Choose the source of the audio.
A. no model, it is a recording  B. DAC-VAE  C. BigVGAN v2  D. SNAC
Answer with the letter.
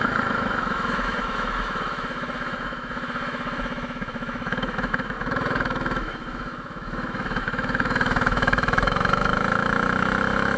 B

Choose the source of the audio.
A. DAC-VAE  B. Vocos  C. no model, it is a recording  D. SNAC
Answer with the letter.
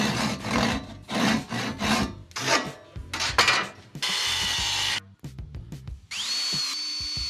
C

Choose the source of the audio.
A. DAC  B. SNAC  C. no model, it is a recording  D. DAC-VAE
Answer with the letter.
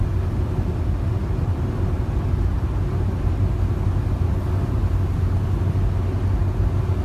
C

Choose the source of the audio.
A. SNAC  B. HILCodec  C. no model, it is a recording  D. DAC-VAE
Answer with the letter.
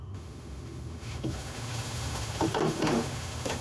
D